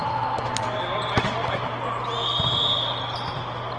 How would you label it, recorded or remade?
recorded